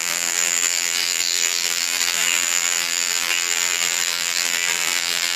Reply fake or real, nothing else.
fake